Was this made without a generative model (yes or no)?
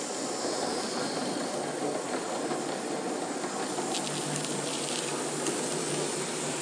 yes